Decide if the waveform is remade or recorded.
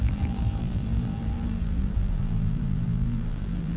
remade